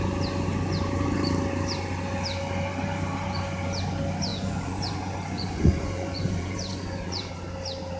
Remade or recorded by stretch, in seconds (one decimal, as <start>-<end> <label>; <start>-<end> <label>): 0.0-4.3 recorded; 4.3-7.3 remade; 7.3-8.0 recorded